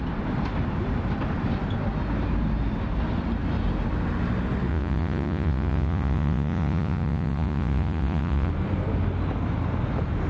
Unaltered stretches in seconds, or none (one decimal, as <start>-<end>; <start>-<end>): 0.0-4.7; 8.5-10.3